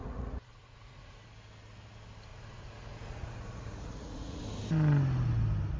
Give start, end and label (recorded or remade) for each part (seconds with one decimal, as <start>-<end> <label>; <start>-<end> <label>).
0.0-1.2 remade; 1.2-2.3 recorded; 2.3-4.4 remade; 4.4-5.8 recorded